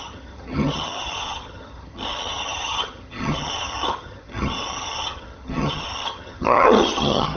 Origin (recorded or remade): remade